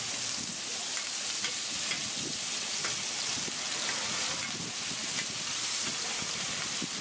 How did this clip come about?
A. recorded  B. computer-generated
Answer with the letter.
A